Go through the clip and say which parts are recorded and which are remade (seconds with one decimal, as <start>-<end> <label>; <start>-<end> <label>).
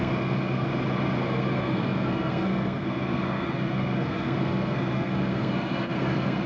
0.0-0.7 remade; 0.7-1.2 recorded; 1.2-6.5 remade